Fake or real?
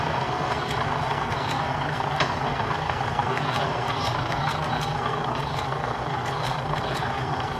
fake